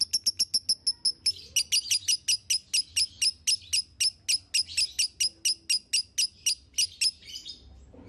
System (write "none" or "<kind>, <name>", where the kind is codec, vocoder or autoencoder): none